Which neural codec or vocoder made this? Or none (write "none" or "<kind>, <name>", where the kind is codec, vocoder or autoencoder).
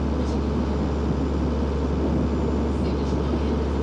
none